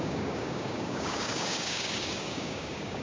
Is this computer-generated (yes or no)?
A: yes